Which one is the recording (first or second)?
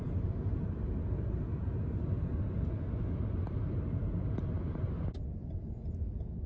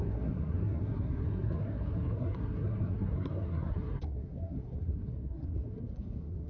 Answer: first